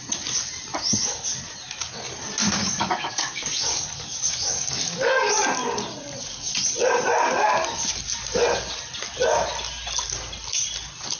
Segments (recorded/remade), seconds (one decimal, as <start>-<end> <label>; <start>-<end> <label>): 0.0-2.4 recorded; 2.4-5.3 remade; 5.3-11.2 recorded